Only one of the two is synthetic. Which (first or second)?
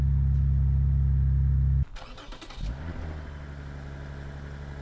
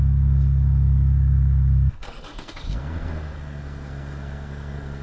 second